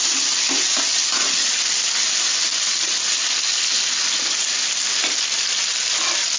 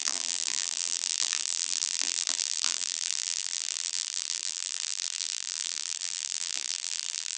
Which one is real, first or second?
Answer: first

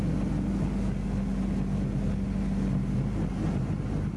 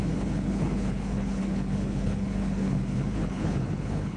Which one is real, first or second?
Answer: first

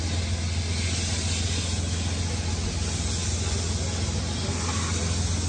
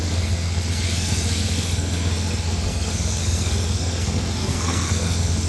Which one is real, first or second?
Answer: first